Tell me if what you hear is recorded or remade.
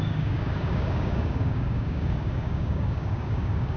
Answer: remade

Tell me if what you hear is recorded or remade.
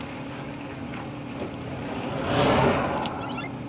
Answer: recorded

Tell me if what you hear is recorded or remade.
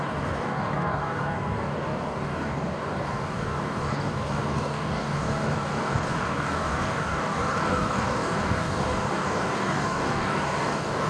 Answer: remade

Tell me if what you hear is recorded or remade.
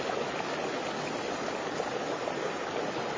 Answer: recorded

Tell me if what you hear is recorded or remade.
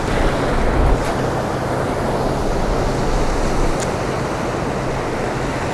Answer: recorded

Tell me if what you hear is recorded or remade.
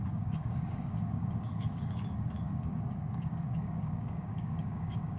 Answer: remade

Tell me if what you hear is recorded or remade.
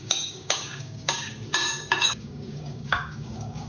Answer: remade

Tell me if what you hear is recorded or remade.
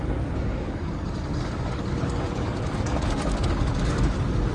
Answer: remade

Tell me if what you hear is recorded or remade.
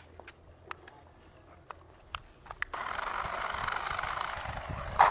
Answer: recorded